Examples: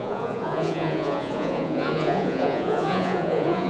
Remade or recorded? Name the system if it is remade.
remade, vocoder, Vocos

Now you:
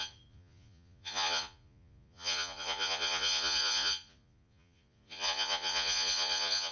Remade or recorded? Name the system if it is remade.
remade, vocoder, Vocos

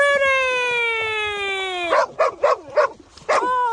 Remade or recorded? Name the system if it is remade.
recorded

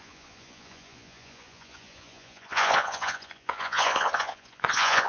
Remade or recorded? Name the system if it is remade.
remade, vocoder, Vocos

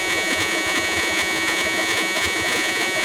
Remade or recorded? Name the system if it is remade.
remade, vocoder, Vocos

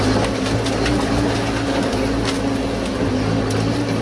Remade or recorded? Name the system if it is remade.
recorded